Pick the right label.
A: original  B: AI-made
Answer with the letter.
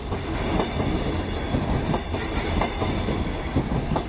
A